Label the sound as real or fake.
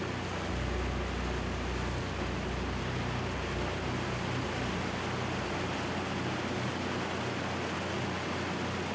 real